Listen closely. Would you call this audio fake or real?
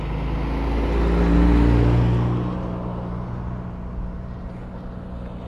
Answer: real